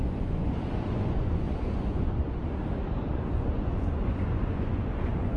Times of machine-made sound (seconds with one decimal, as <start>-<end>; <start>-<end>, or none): 0.0-2.4; 3.1-5.4